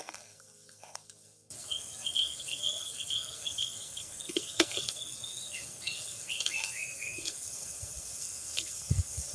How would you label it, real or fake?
fake